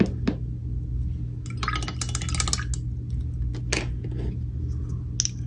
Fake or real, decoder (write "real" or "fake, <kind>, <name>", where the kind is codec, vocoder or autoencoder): real